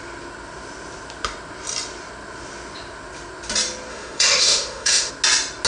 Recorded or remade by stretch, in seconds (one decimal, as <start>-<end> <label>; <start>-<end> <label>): 0.0-3.9 recorded; 3.9-5.1 remade; 5.1-5.7 recorded